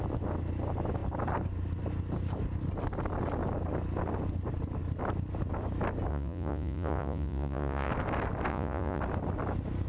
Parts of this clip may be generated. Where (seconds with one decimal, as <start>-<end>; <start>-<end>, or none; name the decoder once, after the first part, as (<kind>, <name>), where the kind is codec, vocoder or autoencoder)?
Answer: 6.1-7.9 (vocoder, Vocos); 8.5-9.0